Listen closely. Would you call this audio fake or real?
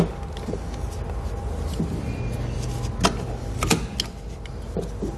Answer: real